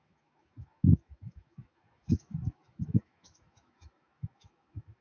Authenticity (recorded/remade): remade